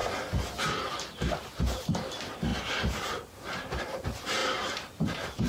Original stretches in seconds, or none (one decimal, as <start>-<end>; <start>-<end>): 0.0-2.5; 3.8-4.4